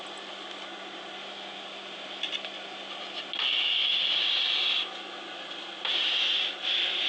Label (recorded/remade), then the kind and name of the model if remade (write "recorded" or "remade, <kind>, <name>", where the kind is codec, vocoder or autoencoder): recorded